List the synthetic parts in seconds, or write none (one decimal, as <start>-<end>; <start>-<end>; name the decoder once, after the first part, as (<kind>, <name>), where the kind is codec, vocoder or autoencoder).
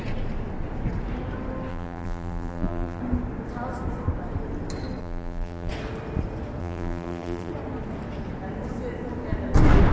1.7-3.0 (vocoder, BigVGAN v2); 5.0-5.7; 6.6-7.5